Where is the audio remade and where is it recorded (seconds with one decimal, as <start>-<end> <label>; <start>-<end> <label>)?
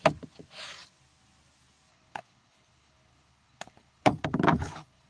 0.0-1.9 recorded; 1.9-5.1 remade